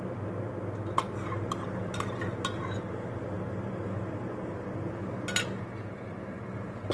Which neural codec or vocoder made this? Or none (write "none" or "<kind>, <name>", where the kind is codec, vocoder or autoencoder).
none